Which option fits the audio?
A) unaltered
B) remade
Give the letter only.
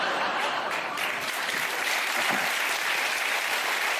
A